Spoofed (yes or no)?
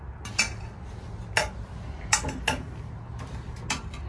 no